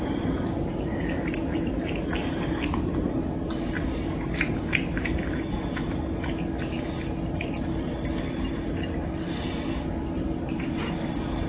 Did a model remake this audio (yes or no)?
no